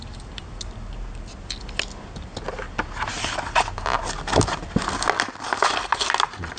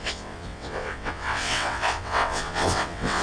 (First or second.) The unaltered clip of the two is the first